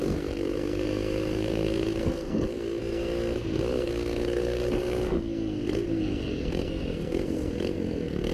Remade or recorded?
remade